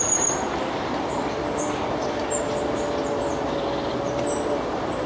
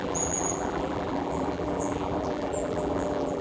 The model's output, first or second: second